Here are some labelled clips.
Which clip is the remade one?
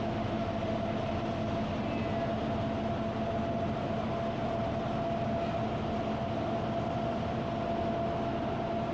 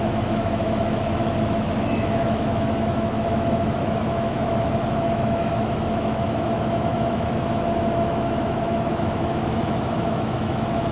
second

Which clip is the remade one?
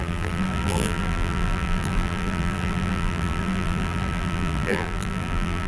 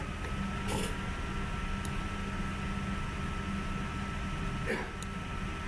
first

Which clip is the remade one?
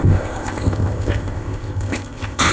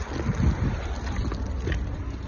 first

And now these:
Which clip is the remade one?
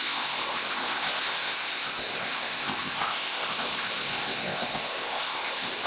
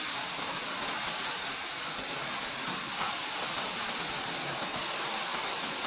first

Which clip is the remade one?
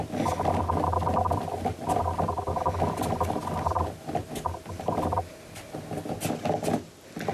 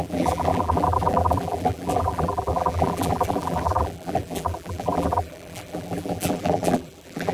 second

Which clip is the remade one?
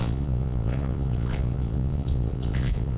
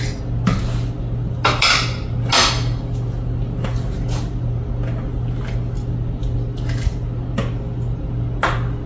first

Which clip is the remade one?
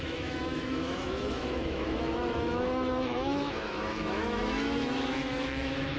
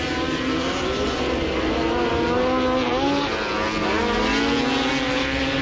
first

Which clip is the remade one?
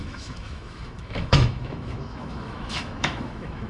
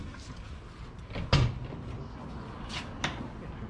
first